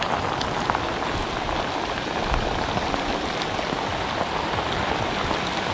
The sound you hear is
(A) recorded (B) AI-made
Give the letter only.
A